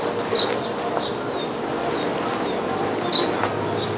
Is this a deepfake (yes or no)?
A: no